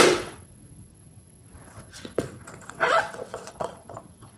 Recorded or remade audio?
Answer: remade